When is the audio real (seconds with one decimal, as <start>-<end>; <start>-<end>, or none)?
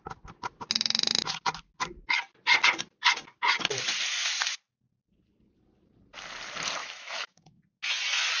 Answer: 0.0-6.8; 7.6-8.4